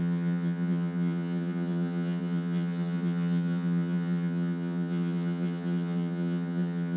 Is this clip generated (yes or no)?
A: yes